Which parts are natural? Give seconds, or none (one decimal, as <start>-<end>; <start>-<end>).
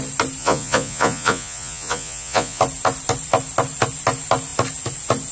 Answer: 0.0-0.4; 2.6-5.3